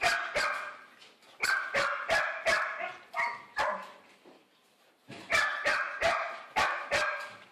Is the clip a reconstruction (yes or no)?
no